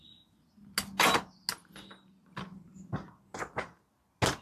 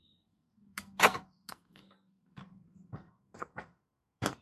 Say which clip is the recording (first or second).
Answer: first